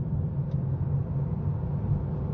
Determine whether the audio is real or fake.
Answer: real